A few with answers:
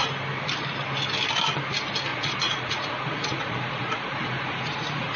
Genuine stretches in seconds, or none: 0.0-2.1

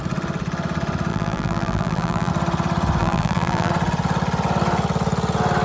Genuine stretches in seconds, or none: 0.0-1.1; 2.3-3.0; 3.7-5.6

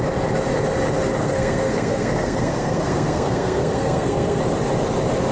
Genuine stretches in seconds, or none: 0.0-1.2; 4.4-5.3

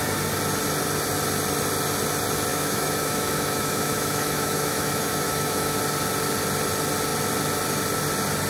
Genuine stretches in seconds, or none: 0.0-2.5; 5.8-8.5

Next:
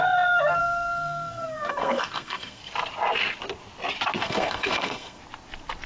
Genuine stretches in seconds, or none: 0.0-0.6; 2.6-4.2; 5.2-5.9

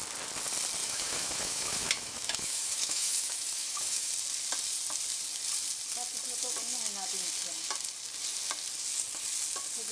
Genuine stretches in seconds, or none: 0.0-0.8; 4.1-9.9

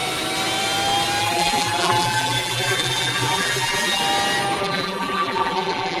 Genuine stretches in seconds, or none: 0.0-1.2; 4.0-4.6